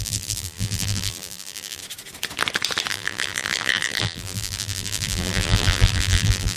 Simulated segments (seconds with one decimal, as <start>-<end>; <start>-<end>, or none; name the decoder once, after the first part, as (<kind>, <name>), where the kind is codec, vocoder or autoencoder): 0.0-1.8 (vocoder, BigVGAN v2); 2.9-6.6